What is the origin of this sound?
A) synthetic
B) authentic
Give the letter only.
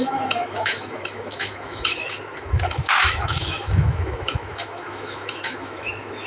A